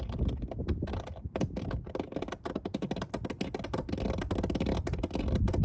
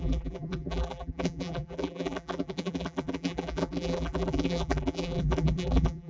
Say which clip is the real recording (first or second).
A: first